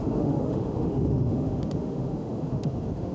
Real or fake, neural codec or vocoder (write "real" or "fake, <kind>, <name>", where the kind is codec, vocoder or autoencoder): fake, autoencoder, DAC-VAE